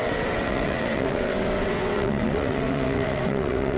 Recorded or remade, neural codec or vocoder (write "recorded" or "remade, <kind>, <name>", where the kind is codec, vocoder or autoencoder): remade, vocoder, WaveNeXt